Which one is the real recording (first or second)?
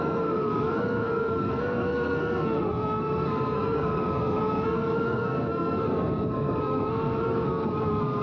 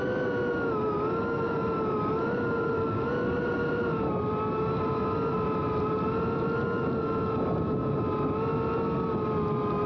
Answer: second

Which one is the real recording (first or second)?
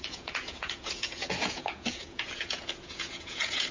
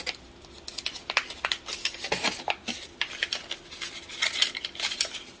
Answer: second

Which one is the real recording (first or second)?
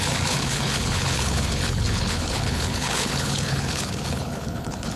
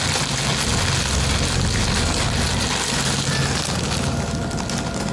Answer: second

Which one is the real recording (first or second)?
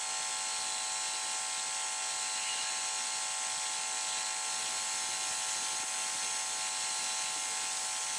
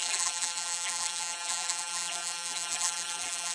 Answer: first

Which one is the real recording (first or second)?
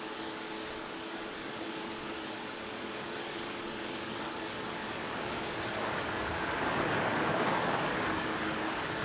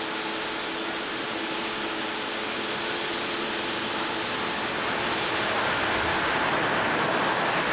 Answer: second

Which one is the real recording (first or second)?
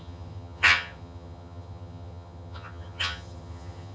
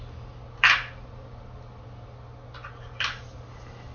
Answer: second